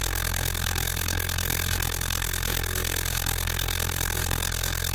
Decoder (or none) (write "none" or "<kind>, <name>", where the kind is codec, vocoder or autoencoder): codec, SNAC